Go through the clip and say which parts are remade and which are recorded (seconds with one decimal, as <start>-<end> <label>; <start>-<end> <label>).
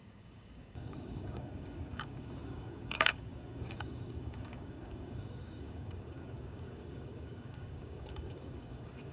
0.0-9.1 remade